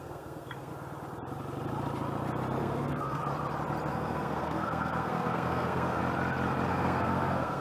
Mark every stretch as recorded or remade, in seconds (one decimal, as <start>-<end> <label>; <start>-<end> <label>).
0.0-0.7 remade; 0.7-2.6 recorded; 2.6-3.2 remade; 3.2-3.9 recorded; 3.9-6.0 remade; 6.0-6.7 recorded; 6.7-7.6 remade